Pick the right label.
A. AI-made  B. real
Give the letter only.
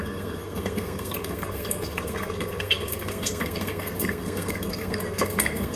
A